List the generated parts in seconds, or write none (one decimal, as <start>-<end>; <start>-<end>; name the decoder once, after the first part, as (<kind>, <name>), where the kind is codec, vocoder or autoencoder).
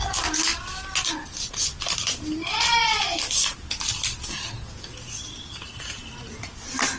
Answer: none